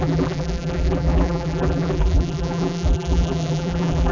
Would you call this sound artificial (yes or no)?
yes